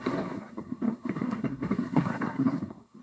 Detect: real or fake fake